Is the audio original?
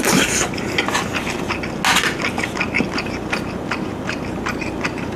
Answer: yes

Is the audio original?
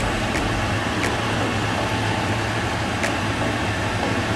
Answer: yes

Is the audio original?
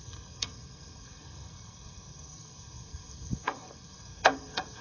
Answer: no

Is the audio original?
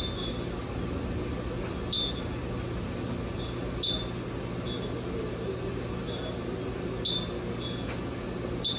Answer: yes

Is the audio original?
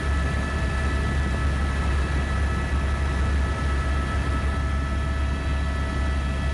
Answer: yes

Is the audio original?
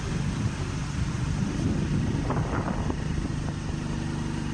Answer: yes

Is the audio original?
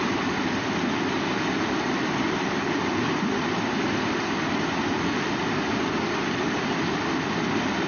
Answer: yes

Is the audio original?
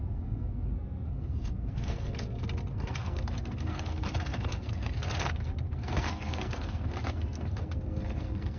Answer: no